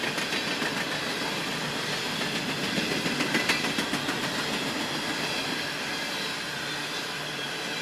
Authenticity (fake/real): real